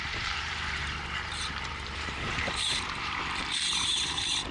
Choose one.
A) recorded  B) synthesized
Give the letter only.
B